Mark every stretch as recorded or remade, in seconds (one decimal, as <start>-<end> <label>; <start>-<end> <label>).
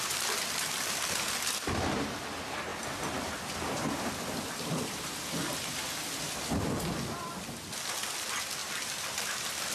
0.0-2.7 recorded; 2.7-6.8 remade; 6.8-8.6 recorded; 8.6-9.7 remade